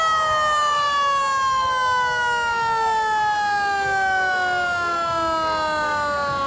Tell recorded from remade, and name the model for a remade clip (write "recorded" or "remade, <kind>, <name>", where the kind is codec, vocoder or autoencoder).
recorded